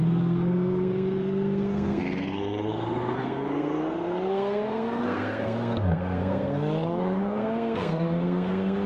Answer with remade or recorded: remade